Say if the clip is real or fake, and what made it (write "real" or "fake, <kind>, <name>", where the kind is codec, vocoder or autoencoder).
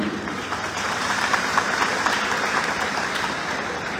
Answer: fake, vocoder, BigVGAN v2